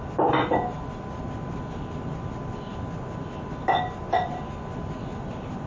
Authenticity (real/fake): real